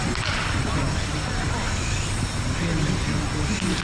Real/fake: real